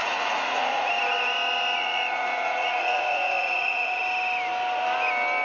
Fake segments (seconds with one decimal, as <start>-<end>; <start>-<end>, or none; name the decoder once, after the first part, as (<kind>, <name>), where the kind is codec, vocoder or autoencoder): 0.0-0.9 (vocoder, Vocos); 1.8-4.0

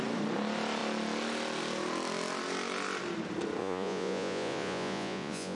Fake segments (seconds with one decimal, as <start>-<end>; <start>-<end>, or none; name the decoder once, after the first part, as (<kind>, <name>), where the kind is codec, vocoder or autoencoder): 3.6-5.6 (vocoder, Vocos)

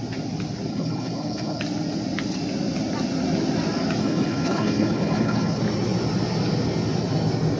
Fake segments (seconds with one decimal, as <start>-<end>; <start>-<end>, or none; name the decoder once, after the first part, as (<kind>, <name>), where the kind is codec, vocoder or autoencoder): 0.7-1.6 (codec, HILCodec); 4.0-5.6

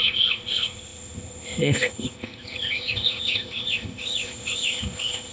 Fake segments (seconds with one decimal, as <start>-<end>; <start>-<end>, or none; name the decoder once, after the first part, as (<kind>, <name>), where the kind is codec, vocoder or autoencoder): 0.0-5.3 (codec, ZipCodec)

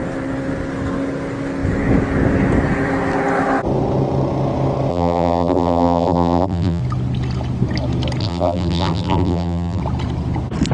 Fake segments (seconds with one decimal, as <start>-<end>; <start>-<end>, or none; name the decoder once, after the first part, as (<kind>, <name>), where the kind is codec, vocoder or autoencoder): 4.9-6.8 (vocoder, BigVGAN v2); 8.2-9.8

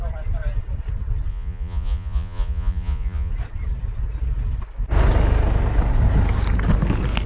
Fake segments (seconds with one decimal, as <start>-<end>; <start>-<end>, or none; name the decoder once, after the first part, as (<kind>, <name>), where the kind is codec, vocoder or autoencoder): 1.3-3.3 (vocoder, Vocos)

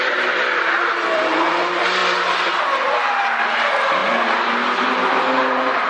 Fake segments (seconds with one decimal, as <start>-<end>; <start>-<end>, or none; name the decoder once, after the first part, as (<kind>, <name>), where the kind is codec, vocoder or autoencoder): 0.0-2.0 (vocoder, BigVGAN v2); 3.6-5.9